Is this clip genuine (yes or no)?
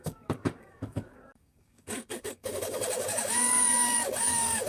no